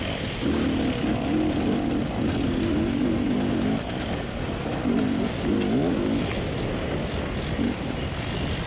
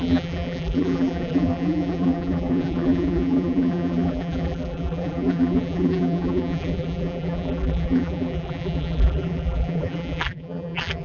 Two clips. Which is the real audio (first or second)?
first